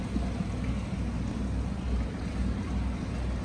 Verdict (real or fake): real